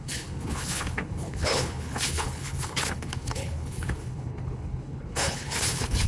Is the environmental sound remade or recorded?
remade